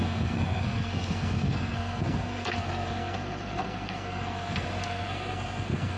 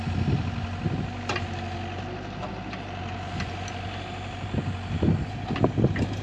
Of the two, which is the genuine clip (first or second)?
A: second